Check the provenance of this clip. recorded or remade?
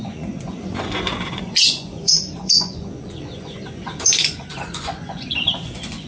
remade